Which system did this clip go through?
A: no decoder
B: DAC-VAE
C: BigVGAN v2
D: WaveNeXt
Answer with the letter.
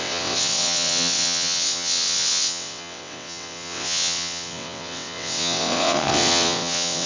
D